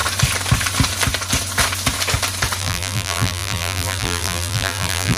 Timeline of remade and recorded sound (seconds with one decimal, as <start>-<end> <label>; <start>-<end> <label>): 0.0-2.6 recorded; 2.6-5.2 remade